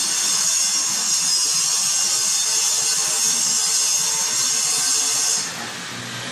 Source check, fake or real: real